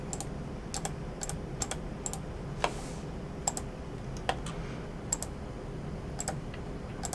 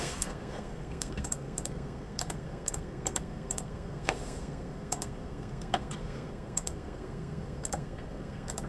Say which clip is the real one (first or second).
first